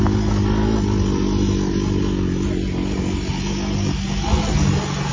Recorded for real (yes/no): yes